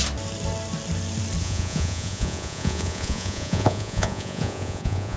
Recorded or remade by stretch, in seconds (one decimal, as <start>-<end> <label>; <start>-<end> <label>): 0.0-1.4 recorded; 1.4-5.2 remade